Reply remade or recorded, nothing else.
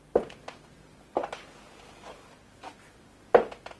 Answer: recorded